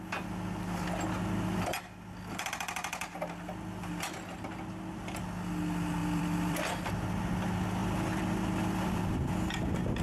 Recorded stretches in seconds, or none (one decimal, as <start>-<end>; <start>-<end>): 0.0-6.0; 6.9-7.8; 9.1-10.0